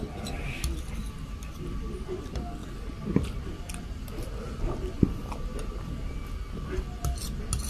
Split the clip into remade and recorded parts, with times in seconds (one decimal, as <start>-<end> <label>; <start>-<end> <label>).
0.0-7.7 recorded